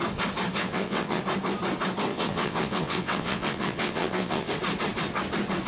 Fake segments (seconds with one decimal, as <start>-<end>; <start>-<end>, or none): 0.6-1.2; 2.1-4.5